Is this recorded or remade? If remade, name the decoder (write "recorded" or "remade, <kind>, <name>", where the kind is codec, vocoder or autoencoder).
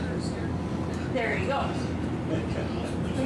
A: recorded